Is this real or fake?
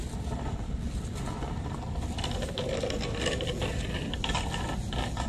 real